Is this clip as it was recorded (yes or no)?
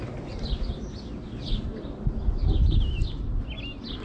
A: yes